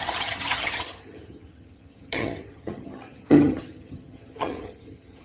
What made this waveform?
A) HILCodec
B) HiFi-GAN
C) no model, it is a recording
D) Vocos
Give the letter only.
B